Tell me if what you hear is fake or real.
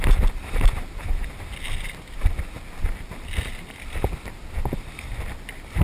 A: real